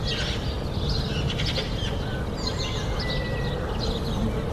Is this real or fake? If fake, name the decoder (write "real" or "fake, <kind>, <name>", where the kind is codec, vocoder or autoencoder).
real